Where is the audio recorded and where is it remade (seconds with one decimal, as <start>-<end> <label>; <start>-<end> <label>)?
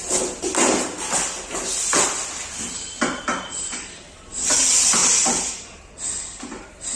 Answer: 0.0-7.0 recorded